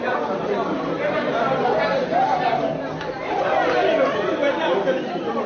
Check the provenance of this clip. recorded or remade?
recorded